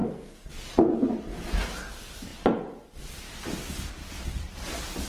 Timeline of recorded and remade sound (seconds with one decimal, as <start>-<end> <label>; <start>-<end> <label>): 0.0-0.5 remade; 0.5-5.1 recorded